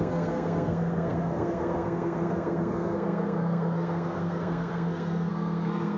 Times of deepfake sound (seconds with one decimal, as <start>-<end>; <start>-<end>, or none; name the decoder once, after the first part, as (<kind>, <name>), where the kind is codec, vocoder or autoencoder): 0.0-6.0 (codec, SNAC)